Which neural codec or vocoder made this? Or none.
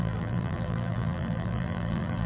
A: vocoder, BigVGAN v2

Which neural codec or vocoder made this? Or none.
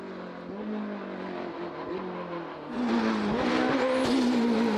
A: none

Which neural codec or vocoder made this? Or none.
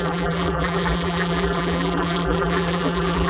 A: vocoder, BigVGAN v2